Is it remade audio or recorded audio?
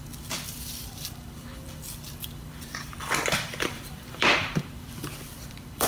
remade